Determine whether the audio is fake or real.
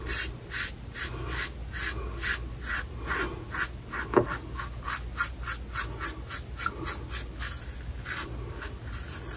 real